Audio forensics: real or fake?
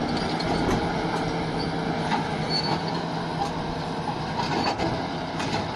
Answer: real